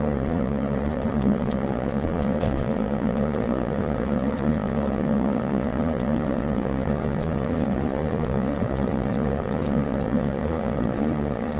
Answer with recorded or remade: remade